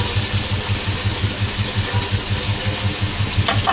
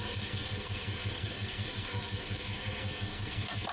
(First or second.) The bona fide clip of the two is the first